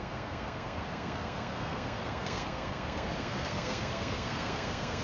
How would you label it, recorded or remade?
remade